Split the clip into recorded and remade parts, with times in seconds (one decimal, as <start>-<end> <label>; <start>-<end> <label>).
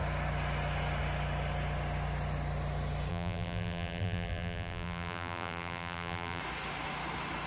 0.0-3.1 recorded; 3.1-6.4 remade; 6.4-7.5 recorded